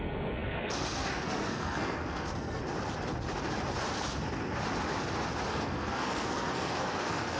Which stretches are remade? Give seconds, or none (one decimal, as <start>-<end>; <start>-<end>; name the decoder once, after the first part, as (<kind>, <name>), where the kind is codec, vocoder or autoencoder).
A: 0.0-2.6 (codec, SNAC); 5.5-7.4